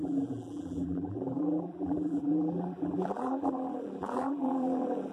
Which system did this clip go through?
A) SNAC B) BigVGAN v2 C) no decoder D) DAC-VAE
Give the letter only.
B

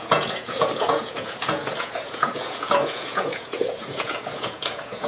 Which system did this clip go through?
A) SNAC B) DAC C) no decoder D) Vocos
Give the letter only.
D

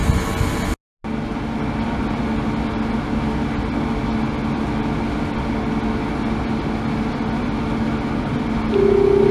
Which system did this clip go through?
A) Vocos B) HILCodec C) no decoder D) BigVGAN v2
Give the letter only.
C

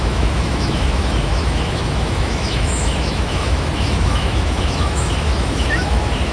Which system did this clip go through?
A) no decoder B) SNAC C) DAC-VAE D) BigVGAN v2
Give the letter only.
C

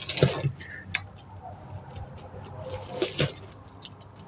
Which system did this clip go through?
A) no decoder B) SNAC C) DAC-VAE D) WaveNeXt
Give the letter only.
A